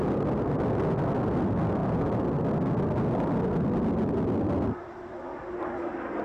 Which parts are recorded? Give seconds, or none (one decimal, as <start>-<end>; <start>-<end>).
0.0-6.2